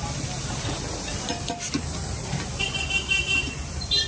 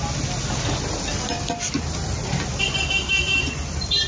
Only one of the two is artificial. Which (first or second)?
first